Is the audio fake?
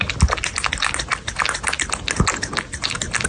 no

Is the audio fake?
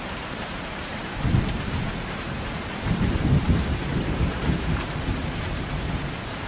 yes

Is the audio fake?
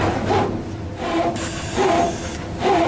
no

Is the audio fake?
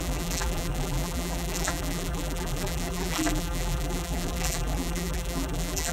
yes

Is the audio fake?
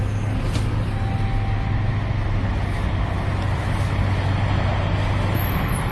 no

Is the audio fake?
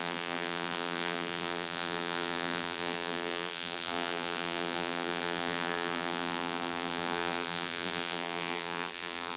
yes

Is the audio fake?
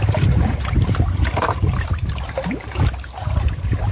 yes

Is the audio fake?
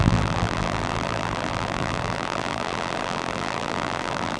yes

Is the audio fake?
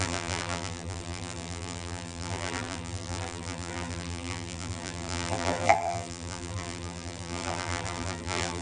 yes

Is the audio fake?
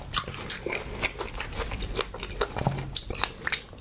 no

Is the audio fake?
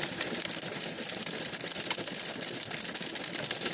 no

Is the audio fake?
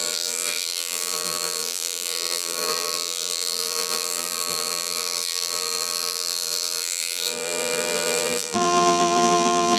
yes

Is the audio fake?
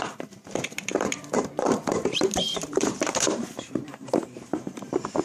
yes